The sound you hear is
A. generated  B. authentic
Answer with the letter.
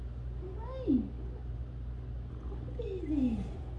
B